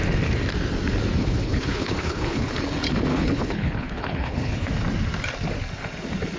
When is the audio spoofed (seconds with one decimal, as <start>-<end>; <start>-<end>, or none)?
1.2-2.5; 3.1-4.7